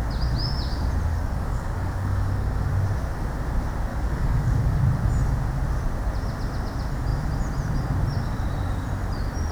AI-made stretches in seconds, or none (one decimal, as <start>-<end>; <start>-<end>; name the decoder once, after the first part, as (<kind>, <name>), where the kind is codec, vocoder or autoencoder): 1.1-2.7 (codec, DAC); 3.9-4.8